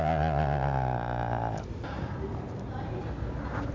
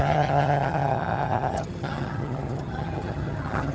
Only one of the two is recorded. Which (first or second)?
first